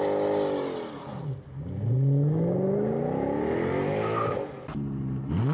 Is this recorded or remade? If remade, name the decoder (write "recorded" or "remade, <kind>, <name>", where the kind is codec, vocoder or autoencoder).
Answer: recorded